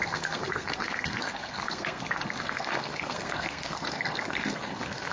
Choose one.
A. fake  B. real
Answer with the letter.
A